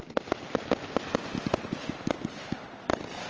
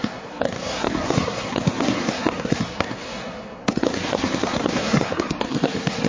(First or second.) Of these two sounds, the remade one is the second